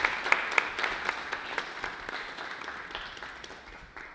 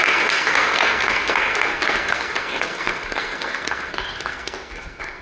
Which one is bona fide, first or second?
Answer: first